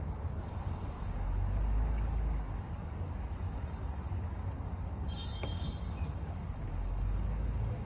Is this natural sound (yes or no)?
no